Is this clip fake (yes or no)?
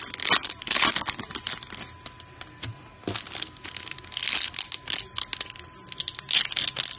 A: no